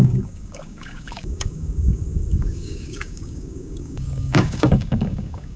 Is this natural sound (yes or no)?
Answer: no